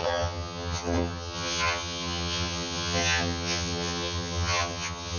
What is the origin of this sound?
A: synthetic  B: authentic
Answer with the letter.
A